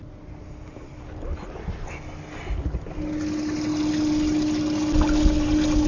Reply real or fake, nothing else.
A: real